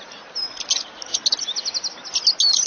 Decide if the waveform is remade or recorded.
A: recorded